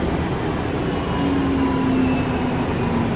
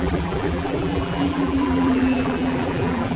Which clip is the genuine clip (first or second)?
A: first